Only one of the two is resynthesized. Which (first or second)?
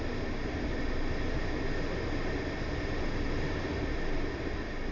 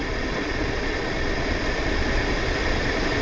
second